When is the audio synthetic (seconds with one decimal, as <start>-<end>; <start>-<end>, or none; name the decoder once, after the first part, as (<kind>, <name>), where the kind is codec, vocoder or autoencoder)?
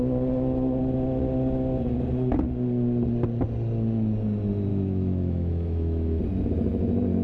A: 4.7-6.2 (autoencoder, DAC-VAE)